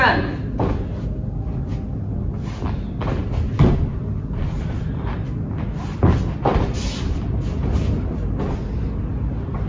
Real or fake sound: real